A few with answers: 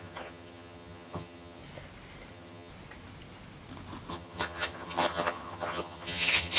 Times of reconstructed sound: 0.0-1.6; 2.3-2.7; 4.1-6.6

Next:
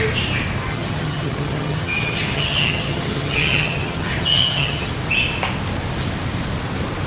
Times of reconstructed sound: 0.7-4.9

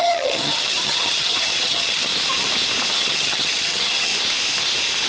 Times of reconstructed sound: 0.0-2.1; 2.9-4.1

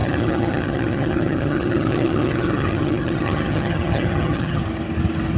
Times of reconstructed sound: 0.0-4.6

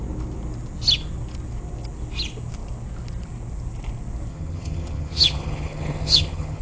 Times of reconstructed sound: 4.3-6.6

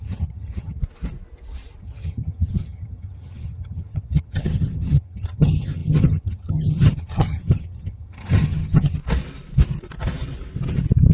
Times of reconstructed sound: 0.0-0.8; 1.8-9.0

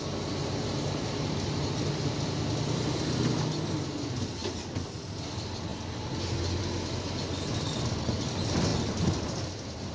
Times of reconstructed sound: none